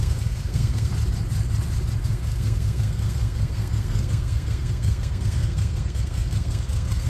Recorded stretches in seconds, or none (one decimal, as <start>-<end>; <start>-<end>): 0.9-2.0